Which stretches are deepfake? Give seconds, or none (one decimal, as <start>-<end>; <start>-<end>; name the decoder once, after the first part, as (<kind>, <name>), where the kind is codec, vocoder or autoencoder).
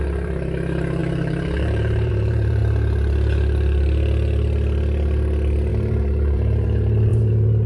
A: 0.0-2.6 (vocoder, BigVGAN v2); 5.7-7.7